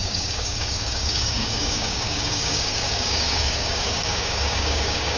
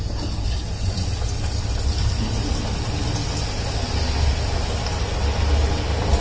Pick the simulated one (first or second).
first